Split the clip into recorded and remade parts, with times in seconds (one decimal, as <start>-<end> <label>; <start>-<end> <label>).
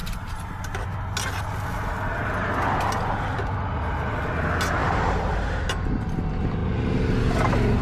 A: 0.0-0.6 remade; 0.6-4.8 recorded; 4.8-5.4 remade; 5.4-7.8 recorded